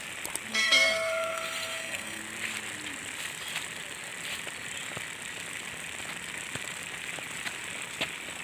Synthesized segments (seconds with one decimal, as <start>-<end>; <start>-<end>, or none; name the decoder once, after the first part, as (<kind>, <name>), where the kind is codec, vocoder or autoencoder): 0.5-2.2 (codec, SNAC)